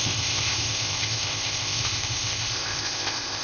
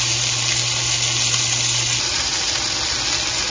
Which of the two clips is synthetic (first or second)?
first